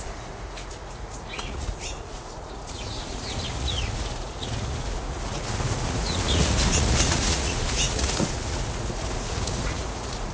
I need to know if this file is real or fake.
fake